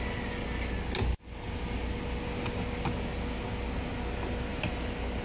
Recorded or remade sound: recorded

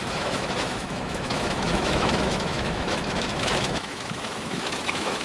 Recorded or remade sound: remade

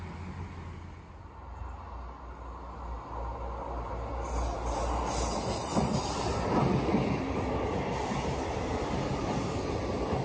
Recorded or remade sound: recorded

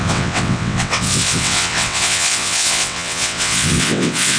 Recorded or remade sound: remade